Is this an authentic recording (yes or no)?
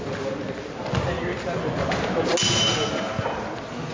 yes